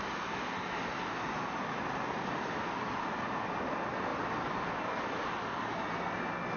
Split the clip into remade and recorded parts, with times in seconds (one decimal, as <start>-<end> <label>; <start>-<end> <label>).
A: 0.0-6.6 recorded